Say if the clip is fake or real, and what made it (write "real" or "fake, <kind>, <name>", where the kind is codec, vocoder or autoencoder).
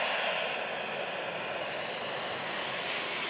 real